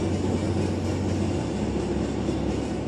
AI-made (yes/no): no